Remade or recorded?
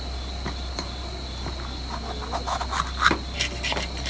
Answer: recorded